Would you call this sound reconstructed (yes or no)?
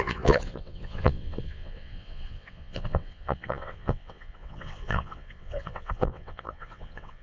yes